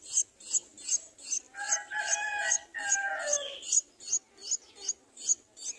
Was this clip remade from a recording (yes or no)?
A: no